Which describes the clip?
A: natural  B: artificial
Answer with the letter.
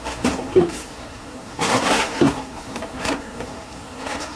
B